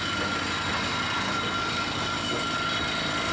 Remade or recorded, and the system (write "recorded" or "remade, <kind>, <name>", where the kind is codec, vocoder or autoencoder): recorded